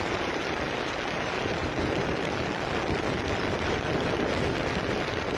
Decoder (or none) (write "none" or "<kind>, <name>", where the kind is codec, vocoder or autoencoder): none